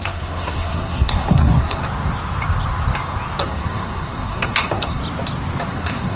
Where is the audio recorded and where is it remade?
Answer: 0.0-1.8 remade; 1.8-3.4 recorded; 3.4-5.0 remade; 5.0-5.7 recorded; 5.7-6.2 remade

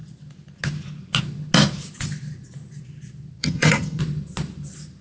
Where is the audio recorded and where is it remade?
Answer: 0.0-3.4 recorded; 3.4-4.0 remade; 4.0-5.0 recorded

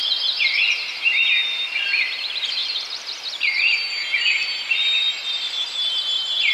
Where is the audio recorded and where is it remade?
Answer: 0.0-1.8 remade; 1.8-2.6 recorded; 2.6-6.5 remade

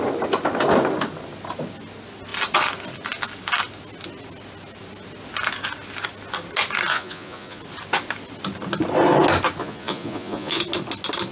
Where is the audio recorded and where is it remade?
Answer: 0.0-6.9 recorded; 6.9-7.6 remade; 7.6-9.6 recorded; 9.6-10.6 remade; 10.6-11.3 recorded

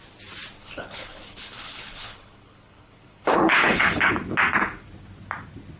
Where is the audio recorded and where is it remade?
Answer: 0.0-0.6 recorded; 0.6-4.1 remade; 4.1-5.8 recorded

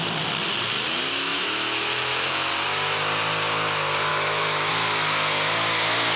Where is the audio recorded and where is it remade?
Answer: 0.0-1.3 recorded; 1.3-2.5 remade; 2.5-4.1 recorded; 4.1-4.7 remade; 4.7-6.2 recorded